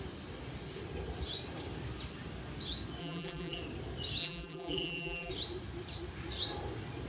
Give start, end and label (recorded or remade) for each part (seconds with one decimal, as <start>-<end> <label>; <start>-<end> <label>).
0.0-3.0 recorded; 3.0-3.6 remade; 3.6-4.2 recorded; 4.2-5.3 remade; 5.3-7.1 recorded